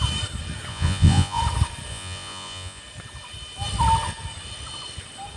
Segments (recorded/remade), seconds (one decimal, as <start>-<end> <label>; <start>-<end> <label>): 0.0-0.7 recorded; 0.7-1.4 remade; 1.4-1.9 recorded; 1.9-2.8 remade; 2.8-5.4 recorded